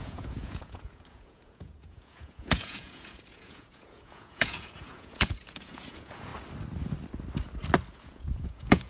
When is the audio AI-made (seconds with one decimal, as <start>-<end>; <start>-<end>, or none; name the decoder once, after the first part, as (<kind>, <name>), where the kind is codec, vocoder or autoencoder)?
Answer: 0.0-6.3 (vocoder, Vocos); 8.0-8.9